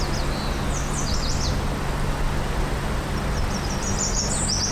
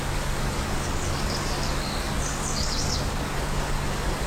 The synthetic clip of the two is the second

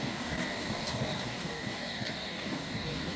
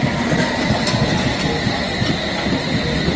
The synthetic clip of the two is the first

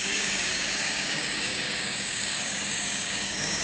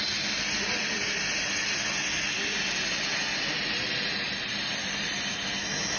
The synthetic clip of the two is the first